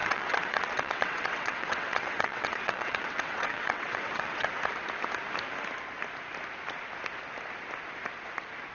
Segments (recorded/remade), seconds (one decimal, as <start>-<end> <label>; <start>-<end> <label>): 0.0-4.5 remade; 4.5-8.7 recorded